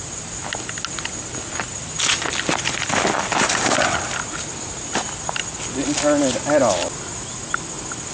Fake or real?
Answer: real